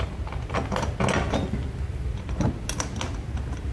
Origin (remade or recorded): recorded